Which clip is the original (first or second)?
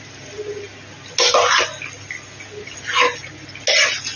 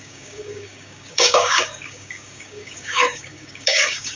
first